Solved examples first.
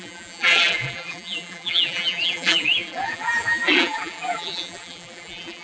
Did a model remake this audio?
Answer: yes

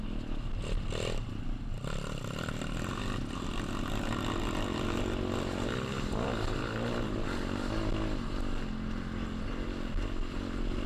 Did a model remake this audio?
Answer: no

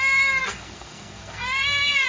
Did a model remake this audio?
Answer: yes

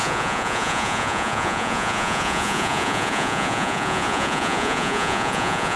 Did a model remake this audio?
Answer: yes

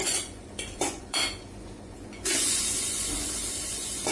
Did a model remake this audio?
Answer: yes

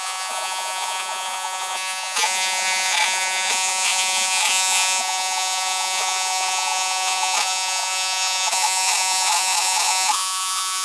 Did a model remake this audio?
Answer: yes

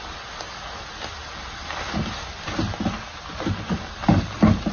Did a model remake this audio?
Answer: no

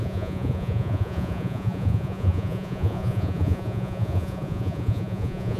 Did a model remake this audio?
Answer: yes